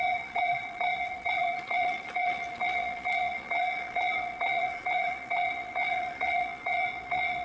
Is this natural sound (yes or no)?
no